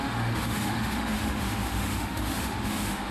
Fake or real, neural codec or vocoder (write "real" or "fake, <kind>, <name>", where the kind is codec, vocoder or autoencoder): fake, autoencoder, DAC-VAE